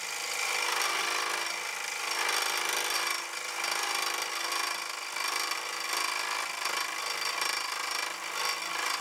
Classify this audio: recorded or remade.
recorded